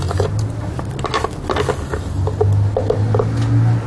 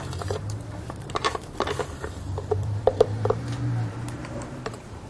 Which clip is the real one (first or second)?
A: first